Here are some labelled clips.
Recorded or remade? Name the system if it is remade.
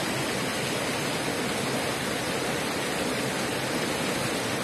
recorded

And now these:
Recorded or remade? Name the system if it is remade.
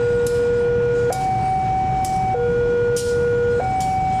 recorded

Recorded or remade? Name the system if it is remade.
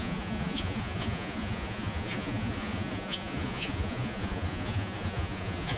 remade, vocoder, Vocos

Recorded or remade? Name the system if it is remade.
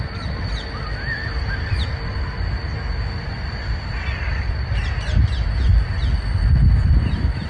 recorded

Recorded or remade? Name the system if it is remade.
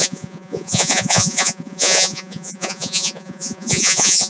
remade, vocoder, Vocos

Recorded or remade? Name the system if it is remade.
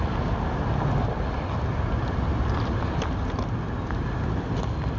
recorded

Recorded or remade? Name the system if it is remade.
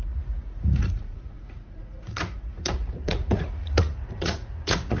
remade, vocoder, Vocos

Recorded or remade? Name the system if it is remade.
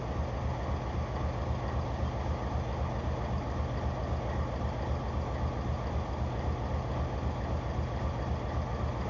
recorded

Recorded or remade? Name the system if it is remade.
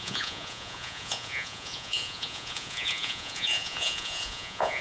remade, vocoder, Vocos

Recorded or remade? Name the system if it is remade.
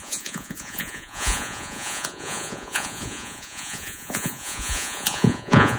remade, vocoder, Vocos